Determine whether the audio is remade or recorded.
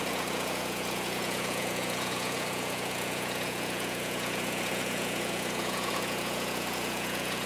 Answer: remade